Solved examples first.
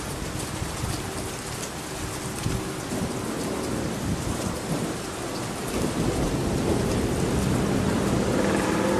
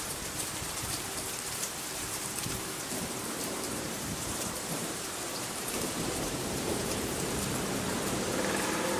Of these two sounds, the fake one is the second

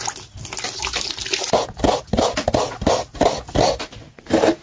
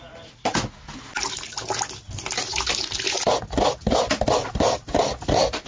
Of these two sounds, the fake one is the first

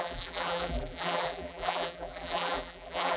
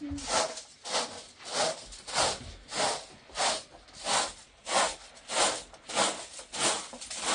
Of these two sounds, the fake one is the first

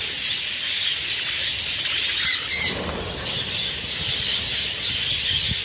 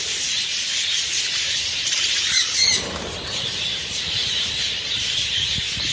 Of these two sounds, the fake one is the second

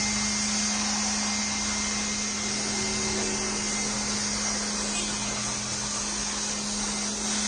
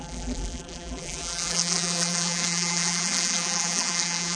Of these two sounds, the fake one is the second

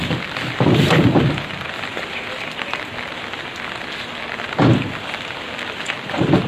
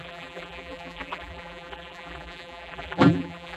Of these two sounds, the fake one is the second